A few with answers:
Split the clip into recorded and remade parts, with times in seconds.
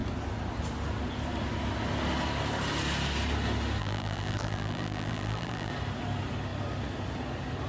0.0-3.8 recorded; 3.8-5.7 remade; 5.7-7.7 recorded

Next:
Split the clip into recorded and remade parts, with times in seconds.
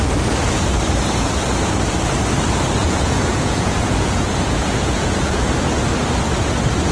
0.0-2.8 recorded; 2.8-5.5 remade; 5.5-6.9 recorded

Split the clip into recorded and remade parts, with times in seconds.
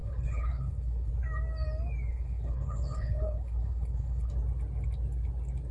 0.0-1.1 remade; 1.1-2.1 recorded; 2.1-4.3 remade; 4.3-5.7 recorded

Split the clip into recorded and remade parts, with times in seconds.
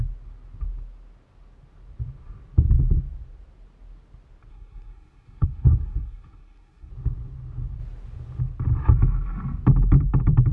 0.0-4.5 recorded; 4.5-6.9 remade; 6.9-10.5 recorded